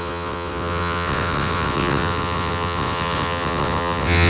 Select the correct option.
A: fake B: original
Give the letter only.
A